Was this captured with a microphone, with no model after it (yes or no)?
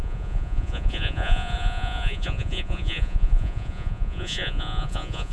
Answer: no